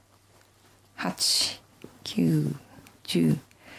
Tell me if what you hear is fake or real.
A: fake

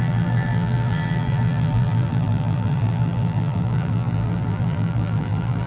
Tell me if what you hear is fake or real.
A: fake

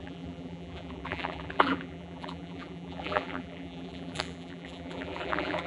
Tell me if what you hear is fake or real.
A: fake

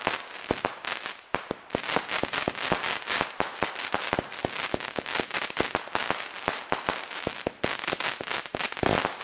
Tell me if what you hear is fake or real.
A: real